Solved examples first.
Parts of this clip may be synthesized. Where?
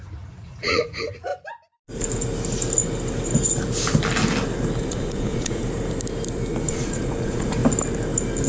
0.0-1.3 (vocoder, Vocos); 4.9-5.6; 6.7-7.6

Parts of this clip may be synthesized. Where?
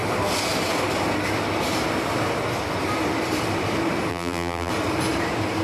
4.1-4.7 (vocoder, BigVGAN v2)